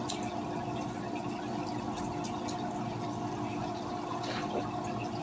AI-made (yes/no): no